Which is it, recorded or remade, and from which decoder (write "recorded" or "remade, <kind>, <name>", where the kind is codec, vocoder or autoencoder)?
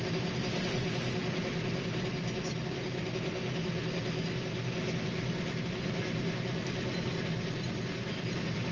recorded